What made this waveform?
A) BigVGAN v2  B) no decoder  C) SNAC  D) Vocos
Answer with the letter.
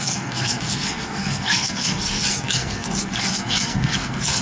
C